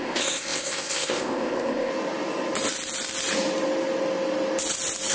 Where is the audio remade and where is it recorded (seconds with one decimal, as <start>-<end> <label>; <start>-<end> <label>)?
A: 0.0-1.9 remade; 1.9-5.1 recorded